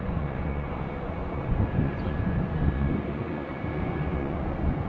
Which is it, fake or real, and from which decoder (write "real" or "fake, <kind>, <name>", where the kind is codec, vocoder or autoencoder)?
fake, vocoder, Vocos